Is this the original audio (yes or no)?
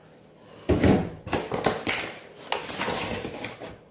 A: yes